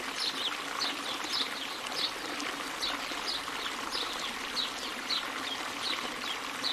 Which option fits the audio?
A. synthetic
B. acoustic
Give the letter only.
B